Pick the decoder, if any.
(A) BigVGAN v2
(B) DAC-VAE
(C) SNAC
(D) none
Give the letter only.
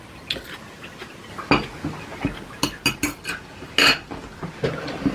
D